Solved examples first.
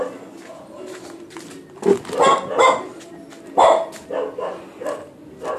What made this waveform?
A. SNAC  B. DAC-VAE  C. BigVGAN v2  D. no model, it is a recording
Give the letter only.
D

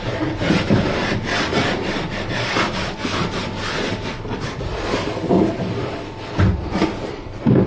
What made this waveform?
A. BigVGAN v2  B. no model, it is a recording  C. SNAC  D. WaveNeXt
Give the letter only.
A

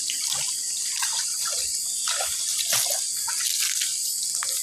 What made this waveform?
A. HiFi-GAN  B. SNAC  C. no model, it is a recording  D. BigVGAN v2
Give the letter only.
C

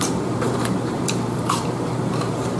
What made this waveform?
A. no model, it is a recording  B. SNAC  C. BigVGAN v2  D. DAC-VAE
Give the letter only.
C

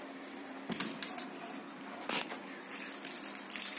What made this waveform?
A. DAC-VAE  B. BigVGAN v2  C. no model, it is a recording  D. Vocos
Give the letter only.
B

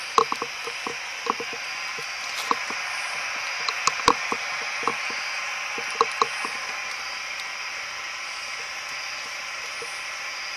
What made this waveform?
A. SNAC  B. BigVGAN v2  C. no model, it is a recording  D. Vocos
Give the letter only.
C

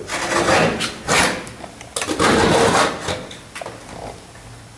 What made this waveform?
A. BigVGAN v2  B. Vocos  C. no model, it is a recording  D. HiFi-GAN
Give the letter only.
C